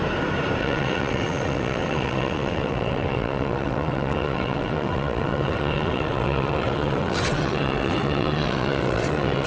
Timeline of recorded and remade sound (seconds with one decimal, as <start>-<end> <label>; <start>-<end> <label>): 0.0-0.6 recorded; 0.6-9.5 remade

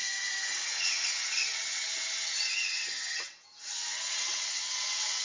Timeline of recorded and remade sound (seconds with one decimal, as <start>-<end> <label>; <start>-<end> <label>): 0.0-5.2 remade